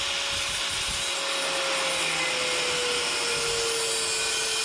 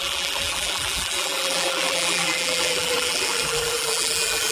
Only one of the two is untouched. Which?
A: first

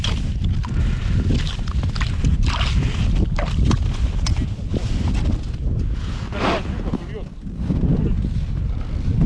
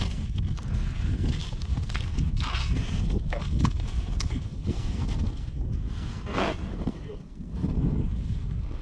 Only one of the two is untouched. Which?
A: first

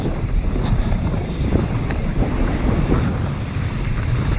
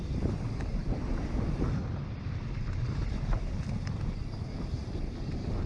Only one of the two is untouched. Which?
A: second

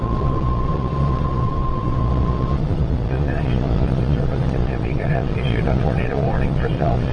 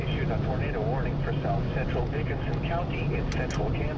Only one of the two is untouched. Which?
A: second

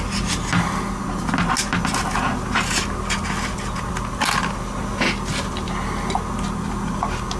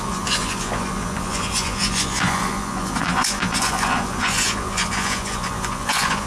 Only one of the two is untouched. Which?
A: first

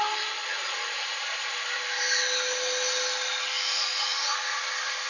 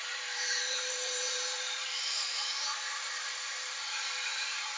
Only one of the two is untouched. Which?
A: first